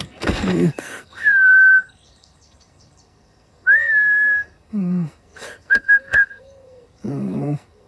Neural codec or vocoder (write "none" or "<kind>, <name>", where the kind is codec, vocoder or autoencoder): codec, SNAC